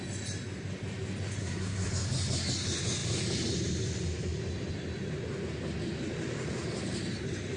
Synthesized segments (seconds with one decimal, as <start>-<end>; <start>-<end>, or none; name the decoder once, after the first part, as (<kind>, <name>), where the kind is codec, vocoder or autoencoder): 1.4-1.9 (codec, SNAC)